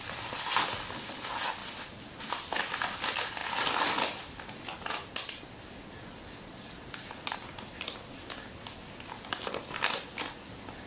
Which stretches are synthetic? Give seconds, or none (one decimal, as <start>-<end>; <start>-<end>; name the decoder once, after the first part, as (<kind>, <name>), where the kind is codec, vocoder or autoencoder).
none